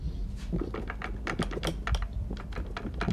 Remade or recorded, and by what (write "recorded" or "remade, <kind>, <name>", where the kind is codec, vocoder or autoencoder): recorded